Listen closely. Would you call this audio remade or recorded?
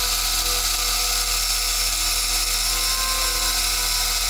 recorded